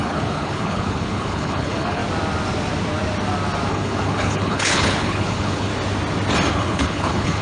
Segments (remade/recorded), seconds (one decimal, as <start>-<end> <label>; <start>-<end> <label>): 0.0-2.0 remade; 2.0-3.7 recorded; 3.7-5.7 remade; 5.7-6.5 recorded; 6.5-7.4 remade